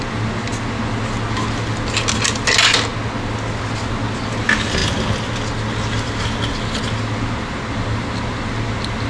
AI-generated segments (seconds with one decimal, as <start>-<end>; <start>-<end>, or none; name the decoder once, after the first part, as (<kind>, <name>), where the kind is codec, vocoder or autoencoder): none